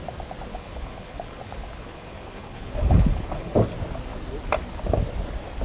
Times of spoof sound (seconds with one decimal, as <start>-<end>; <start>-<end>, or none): 0.5-3.5